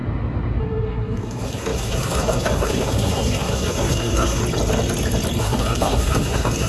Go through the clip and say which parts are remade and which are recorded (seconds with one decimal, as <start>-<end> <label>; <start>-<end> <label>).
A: 0.0-0.6 recorded; 0.6-4.4 remade; 4.4-5.4 recorded; 5.4-6.7 remade